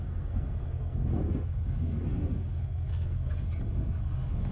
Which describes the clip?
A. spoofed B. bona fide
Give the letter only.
A